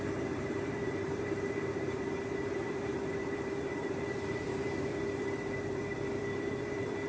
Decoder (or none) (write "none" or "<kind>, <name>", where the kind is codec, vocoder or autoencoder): vocoder, BigVGAN v2